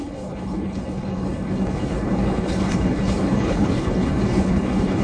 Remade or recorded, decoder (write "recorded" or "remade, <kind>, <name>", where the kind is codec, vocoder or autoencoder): remade, codec, HILCodec